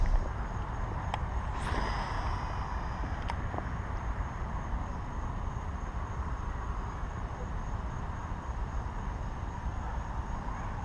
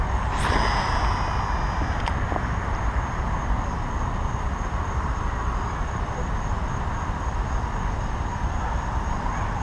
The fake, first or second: first